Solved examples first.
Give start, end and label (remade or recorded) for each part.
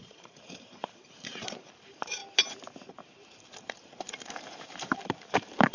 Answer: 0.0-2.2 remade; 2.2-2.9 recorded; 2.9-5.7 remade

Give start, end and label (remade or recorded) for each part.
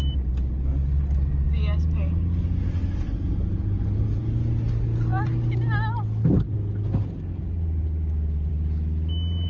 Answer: 0.0-9.5 recorded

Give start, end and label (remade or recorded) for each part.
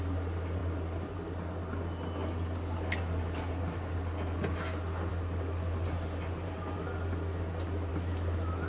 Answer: 0.0-7.9 recorded; 7.9-8.7 remade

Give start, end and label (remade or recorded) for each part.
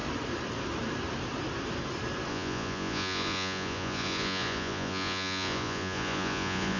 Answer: 0.0-2.3 recorded; 2.3-6.8 remade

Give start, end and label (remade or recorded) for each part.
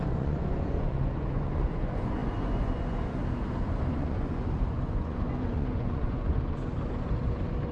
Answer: 0.0-3.2 remade; 3.2-3.9 recorded; 3.9-6.7 remade; 6.7-7.7 recorded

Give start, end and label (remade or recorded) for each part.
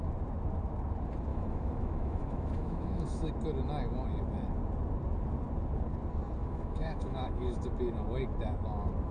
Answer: 0.0-1.3 recorded; 1.3-3.3 remade; 3.3-6.4 recorded; 6.4-7.7 remade; 7.7-9.1 recorded